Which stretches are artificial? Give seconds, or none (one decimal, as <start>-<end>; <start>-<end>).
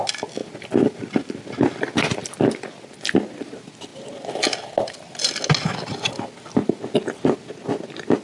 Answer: none